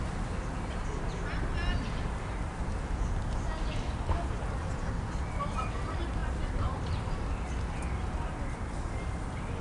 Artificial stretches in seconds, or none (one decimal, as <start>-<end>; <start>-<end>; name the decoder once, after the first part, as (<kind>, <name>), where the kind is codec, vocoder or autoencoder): none